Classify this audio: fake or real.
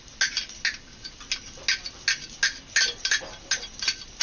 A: real